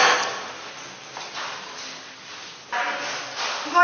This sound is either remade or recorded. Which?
recorded